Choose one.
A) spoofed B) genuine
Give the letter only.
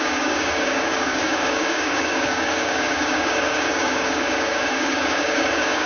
A